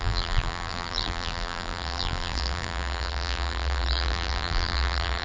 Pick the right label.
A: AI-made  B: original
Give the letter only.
A